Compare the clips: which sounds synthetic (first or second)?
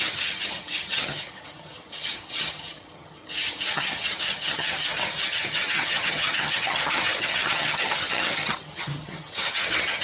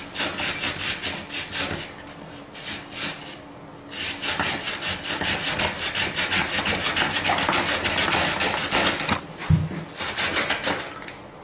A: first